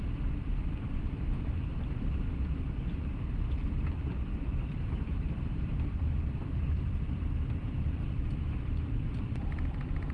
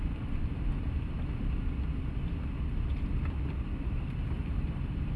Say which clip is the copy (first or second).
first